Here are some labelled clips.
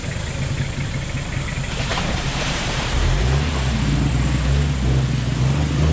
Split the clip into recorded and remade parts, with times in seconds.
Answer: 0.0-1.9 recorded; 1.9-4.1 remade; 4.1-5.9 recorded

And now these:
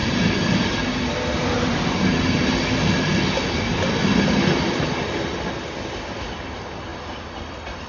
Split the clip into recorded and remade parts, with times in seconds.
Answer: 0.0-2.2 remade; 2.2-7.9 recorded

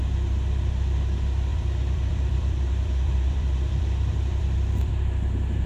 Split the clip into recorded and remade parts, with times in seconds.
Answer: 0.0-1.5 recorded; 1.5-4.9 remade; 4.9-5.7 recorded

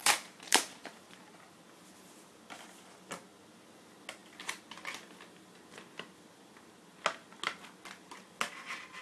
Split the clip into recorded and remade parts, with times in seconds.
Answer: 0.0-1.6 remade; 1.6-9.0 recorded